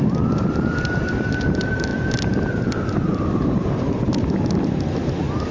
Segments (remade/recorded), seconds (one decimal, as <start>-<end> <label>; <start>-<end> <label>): 0.0-5.5 recorded